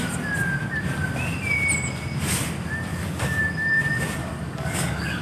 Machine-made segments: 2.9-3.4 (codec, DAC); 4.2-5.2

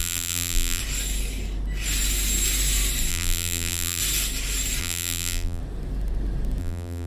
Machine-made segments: 0.0-0.8 (vocoder, BigVGAN v2); 3.1-4.0; 4.8-5.6; 6.6-7.1

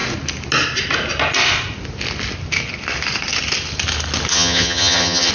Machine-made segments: 4.3-5.3 (vocoder, HiFi-GAN)

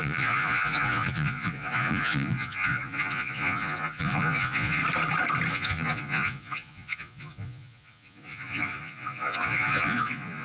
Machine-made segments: 0.0-4.8 (vocoder, Vocos); 5.5-10.4

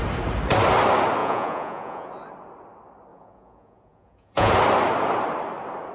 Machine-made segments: 1.2-2.1 (vocoder, Vocos); 3.1-4.5

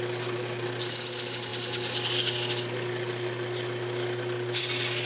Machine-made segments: none